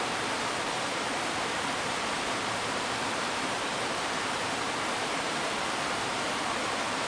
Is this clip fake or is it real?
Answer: fake